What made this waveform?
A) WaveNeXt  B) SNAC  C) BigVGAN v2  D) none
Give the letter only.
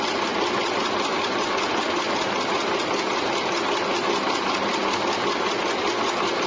D